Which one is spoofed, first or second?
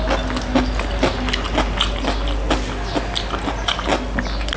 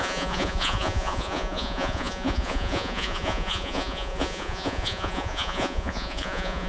second